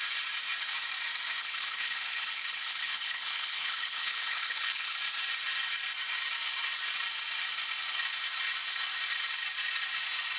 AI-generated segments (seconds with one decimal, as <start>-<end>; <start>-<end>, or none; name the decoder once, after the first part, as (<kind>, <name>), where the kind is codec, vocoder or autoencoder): 1.4-5.0 (codec, HILCodec)